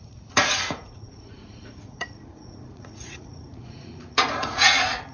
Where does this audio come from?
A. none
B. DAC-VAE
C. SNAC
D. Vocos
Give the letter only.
D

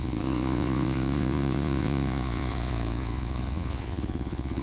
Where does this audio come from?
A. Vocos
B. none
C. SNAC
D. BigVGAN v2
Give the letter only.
A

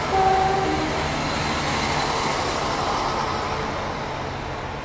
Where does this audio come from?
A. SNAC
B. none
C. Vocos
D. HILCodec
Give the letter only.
B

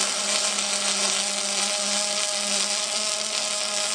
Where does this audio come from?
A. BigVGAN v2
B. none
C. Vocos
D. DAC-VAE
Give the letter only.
B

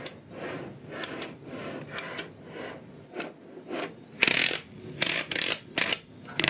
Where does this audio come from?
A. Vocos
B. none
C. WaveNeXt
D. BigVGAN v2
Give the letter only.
B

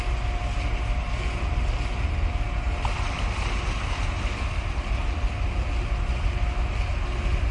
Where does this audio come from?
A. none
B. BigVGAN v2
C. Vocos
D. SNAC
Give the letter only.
A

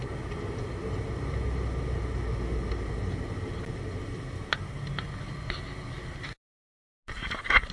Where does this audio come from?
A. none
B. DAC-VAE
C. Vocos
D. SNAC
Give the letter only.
A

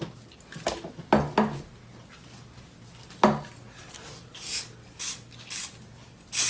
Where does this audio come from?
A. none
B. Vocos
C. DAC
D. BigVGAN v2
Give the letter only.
A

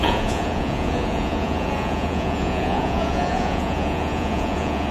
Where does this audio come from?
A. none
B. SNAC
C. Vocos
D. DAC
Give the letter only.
C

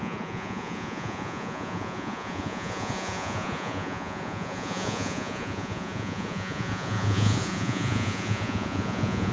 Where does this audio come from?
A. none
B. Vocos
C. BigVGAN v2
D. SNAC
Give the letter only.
B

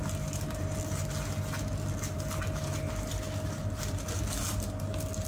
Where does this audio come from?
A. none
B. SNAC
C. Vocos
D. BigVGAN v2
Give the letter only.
A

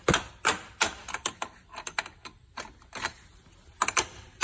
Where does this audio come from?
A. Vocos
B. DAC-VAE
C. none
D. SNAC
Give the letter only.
C